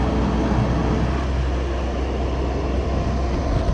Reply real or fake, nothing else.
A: real